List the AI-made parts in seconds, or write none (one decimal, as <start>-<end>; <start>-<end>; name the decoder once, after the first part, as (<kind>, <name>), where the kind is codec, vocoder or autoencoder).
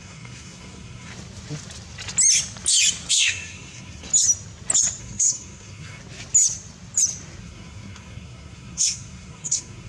0.0-1.1 (codec, SNAC); 3.1-4.1; 5.0-6.0; 7.4-9.9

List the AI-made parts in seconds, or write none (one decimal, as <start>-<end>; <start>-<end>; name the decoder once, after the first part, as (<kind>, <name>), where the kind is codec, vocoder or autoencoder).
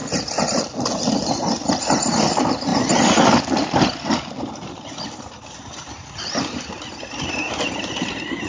none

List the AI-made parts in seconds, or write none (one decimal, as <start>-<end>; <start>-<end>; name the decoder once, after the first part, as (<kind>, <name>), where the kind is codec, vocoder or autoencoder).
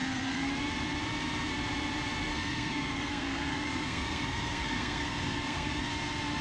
0.0-0.5 (codec, SNAC); 2.3-5.9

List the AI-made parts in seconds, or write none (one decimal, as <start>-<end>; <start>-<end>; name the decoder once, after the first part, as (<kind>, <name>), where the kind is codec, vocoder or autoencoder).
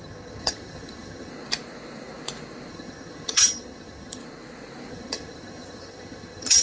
0.0-1.3 (vocoder, HiFi-GAN); 2.7-4.2; 4.9-6.6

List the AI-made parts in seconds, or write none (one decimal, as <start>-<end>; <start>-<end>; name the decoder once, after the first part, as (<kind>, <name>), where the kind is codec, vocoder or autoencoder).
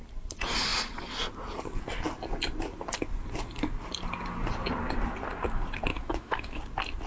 5.9-6.6 (autoencoder, DAC-VAE)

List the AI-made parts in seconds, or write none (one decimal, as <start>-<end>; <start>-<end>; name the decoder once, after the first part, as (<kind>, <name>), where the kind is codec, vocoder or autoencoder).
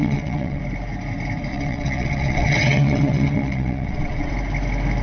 0.0-0.6 (vocoder, WaveNeXt); 1.5-4.3